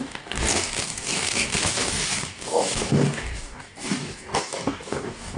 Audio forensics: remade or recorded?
remade